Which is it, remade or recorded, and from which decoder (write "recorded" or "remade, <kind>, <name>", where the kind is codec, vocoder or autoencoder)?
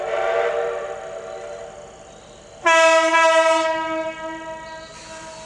recorded